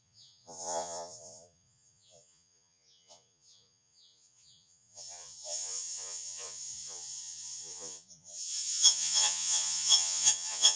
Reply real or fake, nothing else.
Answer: fake